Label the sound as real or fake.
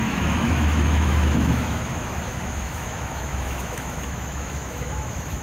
fake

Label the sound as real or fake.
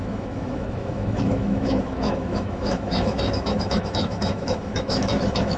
fake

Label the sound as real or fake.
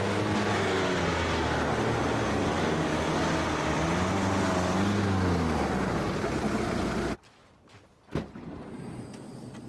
real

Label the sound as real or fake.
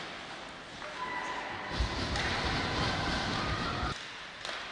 real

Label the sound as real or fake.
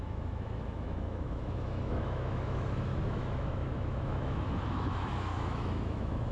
fake